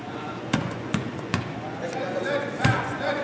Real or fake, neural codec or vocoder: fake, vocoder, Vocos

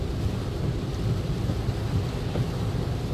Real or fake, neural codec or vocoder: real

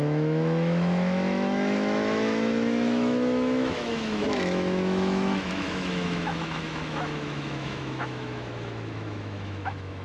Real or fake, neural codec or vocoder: fake, autoencoder, DAC-VAE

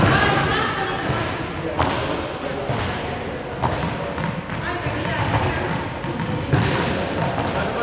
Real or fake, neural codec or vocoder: real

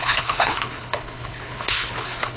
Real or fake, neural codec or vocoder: fake, codec, HILCodec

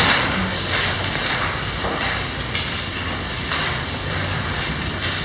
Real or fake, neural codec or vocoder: real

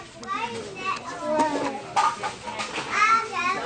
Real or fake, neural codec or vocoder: real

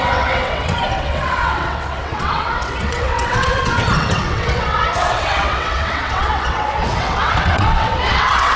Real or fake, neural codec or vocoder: fake, vocoder, WaveNeXt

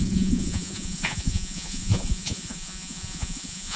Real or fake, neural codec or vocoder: fake, vocoder, Vocos